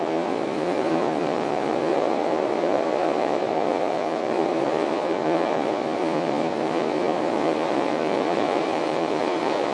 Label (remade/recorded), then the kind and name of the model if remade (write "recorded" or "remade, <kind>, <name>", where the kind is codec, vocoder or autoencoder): remade, vocoder, Vocos